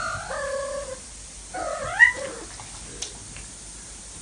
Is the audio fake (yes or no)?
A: no